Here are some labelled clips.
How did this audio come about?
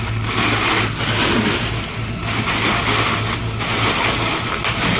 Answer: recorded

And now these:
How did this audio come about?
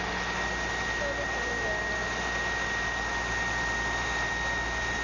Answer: recorded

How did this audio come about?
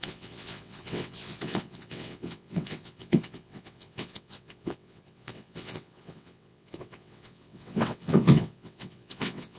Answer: remade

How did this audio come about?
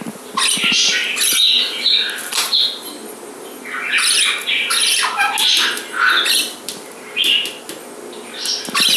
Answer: recorded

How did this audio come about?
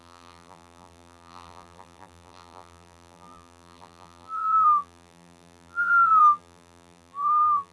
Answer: remade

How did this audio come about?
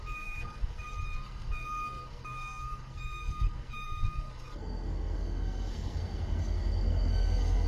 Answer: remade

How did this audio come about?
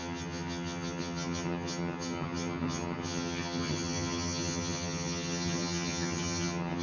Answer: remade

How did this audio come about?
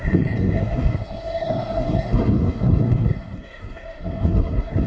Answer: remade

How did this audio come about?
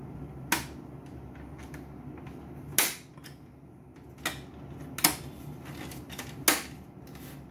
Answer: recorded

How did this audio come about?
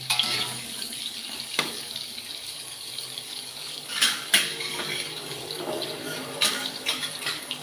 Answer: remade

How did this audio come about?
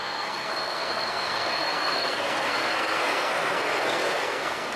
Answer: remade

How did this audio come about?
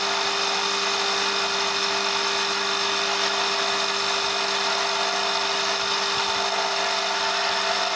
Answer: recorded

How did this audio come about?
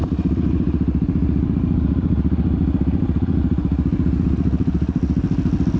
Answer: recorded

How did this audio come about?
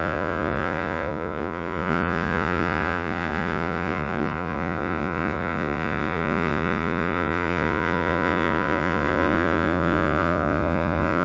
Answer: remade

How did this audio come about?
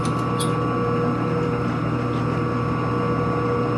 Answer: recorded